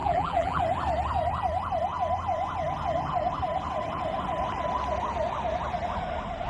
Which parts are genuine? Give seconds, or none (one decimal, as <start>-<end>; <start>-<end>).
0.6-6.5